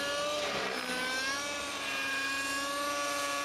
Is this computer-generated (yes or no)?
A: no